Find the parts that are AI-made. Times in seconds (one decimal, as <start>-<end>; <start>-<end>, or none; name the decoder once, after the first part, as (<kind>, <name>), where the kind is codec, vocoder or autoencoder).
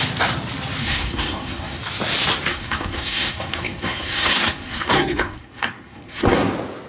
0.8-1.8 (codec, SNAC); 2.5-6.5